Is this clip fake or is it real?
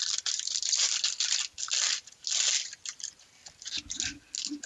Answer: real